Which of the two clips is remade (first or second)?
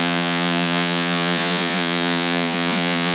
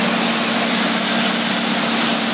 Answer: first